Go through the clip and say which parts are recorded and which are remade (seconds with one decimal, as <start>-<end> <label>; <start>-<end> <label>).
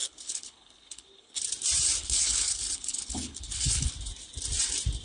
0.0-1.4 remade; 1.4-2.0 recorded; 2.0-3.9 remade; 3.9-5.0 recorded